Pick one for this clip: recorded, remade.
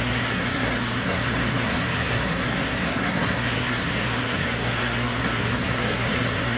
remade